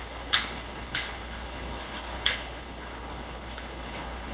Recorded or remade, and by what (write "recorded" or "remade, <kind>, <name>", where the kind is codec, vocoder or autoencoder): remade, codec, HILCodec